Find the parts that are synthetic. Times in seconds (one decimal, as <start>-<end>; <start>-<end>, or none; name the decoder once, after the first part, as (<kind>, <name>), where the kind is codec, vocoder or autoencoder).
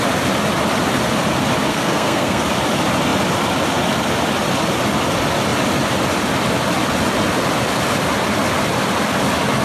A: 1.7-2.4 (codec, SNAC)